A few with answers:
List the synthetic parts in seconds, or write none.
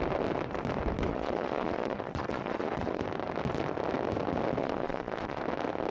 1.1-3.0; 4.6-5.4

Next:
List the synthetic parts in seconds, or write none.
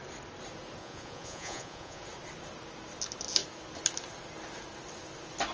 0.8-2.0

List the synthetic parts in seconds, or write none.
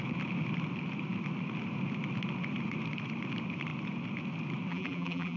4.7-5.4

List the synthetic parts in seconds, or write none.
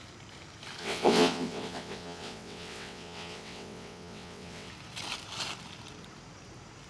0.8-4.7